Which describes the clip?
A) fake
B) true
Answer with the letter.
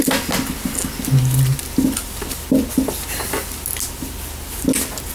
B